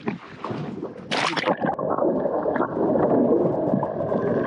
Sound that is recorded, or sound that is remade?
recorded